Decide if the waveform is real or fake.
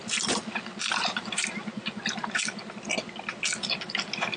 real